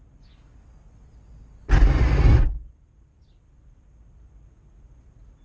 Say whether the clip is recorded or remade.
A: recorded